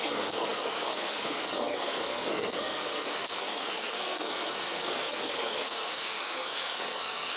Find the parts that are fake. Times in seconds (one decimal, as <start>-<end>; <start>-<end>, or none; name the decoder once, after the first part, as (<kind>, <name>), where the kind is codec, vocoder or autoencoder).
0.0-7.4 (codec, SNAC)